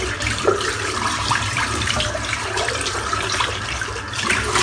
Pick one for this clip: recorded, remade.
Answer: remade